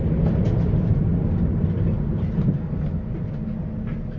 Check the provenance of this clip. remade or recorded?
recorded